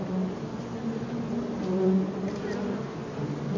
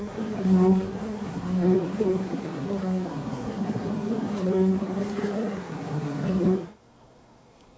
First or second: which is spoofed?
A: second